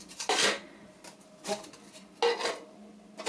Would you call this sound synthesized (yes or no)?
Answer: no